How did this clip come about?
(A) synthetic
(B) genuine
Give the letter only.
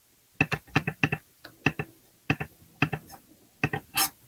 B